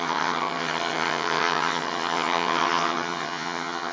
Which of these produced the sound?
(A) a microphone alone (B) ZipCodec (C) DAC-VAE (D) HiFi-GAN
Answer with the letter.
D